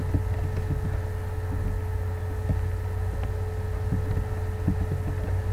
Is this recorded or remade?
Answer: recorded